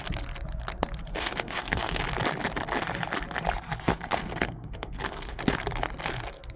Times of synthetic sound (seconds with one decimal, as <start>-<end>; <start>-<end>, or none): 1.1-2.0; 3.9-5.4

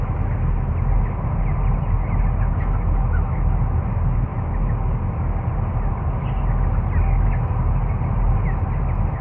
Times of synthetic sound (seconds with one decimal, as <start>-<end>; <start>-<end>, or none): none